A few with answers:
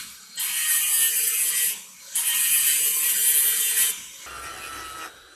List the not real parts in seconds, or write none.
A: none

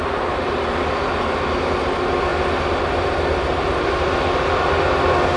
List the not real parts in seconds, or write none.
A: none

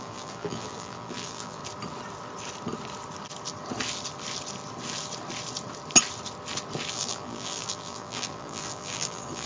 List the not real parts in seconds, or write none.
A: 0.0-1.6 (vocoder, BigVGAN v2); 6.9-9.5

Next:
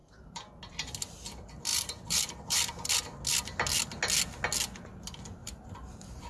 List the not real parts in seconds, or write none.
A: 0.0-0.6 (vocoder, BigVGAN v2); 1.7-2.7; 5.4-6.3

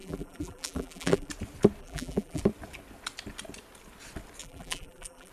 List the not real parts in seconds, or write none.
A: 0.0-1.3 (vocoder, BigVGAN v2); 1.8-2.4; 4.4-5.3

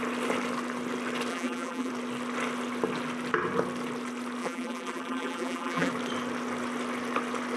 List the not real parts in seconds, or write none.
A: 1.3-1.9 (vocoder, BigVGAN v2); 4.4-5.9

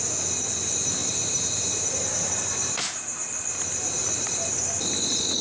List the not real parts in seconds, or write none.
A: 1.0-2.8 (vocoder, BigVGAN v2); 4.0-4.6

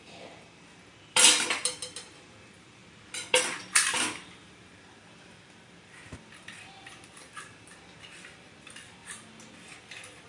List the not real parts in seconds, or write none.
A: 0.0-9.0 (vocoder, BigVGAN v2); 9.8-10.3